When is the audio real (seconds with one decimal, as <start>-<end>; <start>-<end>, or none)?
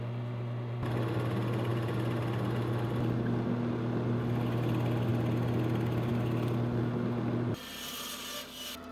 0.0-8.9